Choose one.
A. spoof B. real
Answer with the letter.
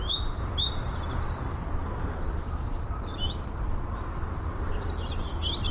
B